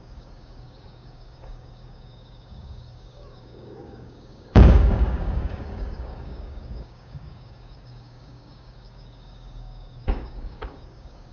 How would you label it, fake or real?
fake